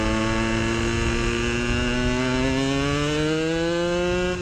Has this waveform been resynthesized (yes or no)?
no